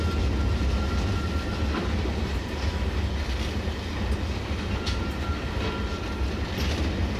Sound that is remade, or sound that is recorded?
recorded